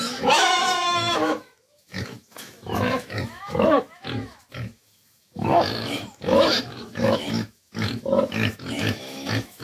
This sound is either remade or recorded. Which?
remade